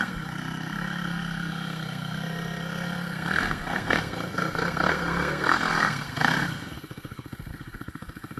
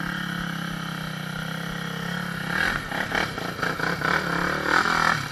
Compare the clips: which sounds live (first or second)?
second